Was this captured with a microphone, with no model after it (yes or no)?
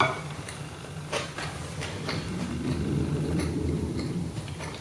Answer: no